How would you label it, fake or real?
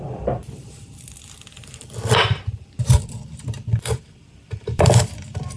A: fake